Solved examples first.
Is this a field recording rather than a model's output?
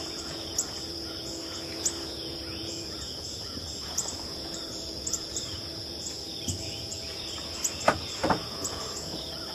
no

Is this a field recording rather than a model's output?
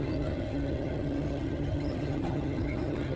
no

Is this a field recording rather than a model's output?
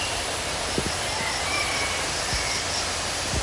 yes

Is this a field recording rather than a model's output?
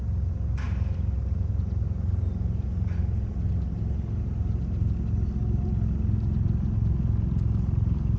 yes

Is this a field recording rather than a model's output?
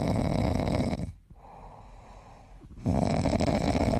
yes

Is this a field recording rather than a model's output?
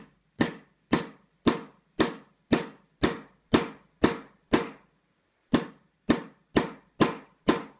yes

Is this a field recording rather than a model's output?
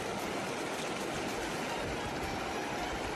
yes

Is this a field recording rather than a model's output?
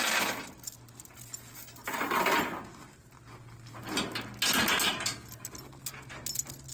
yes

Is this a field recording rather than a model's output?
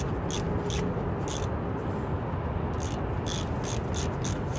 yes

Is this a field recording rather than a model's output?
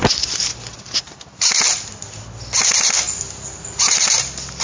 yes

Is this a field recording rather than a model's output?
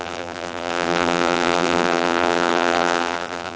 no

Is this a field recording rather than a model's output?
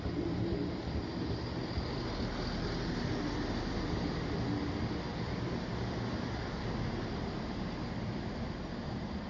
yes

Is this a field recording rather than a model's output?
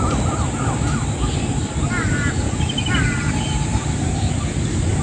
yes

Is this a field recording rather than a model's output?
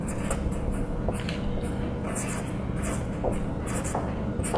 yes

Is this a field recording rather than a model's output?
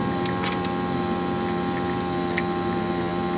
yes